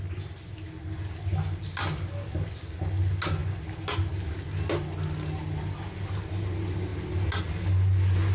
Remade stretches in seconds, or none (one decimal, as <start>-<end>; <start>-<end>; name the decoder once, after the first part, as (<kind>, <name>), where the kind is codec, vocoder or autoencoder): none